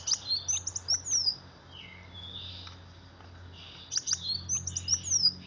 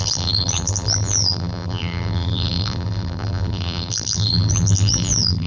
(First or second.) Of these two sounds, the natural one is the first